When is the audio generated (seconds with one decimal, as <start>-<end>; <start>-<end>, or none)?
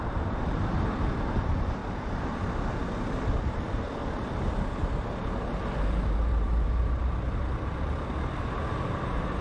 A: 0.0-1.8; 3.4-4.0; 5.7-9.4